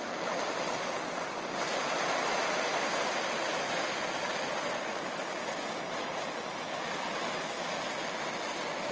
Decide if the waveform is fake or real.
real